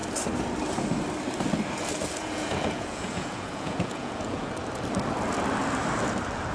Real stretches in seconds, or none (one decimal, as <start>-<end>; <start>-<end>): 0.0-2.2; 4.5-6.5